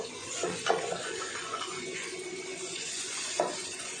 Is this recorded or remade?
remade